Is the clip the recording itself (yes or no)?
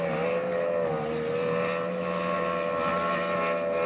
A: yes